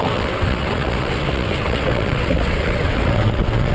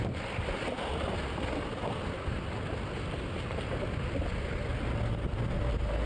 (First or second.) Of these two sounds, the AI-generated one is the first